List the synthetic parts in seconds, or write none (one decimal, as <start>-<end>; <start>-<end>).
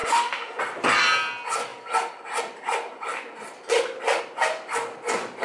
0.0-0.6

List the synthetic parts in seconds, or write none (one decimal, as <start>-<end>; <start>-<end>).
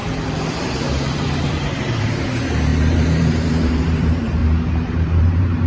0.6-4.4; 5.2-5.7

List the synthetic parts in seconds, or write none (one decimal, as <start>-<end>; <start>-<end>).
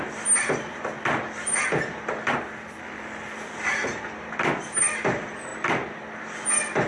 none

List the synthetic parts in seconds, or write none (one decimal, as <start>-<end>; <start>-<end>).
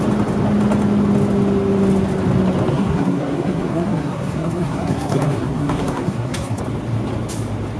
2.7-6.6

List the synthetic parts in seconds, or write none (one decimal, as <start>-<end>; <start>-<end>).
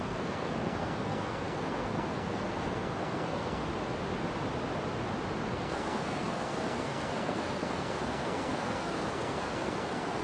0.0-3.7; 5.5-10.2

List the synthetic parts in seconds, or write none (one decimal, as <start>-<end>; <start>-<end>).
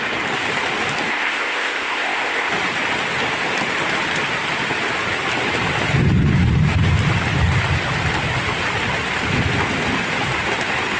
1.1-2.5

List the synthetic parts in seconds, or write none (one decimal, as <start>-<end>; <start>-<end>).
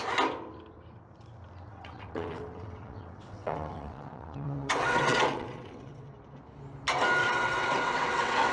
1.7-6.1; 7.2-8.5